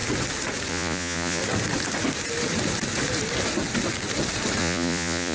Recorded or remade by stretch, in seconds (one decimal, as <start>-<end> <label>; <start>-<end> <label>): 0.0-0.7 recorded; 0.7-1.4 remade; 1.4-4.6 recorded; 4.6-5.3 remade